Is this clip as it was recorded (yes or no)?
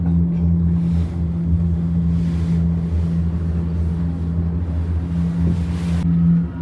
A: yes